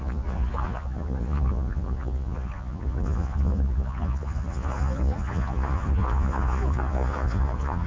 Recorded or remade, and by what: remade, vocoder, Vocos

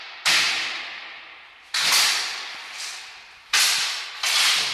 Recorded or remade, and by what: recorded